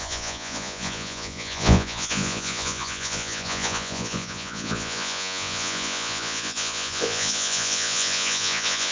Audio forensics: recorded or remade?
remade